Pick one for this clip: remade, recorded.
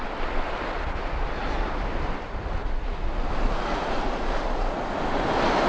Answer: recorded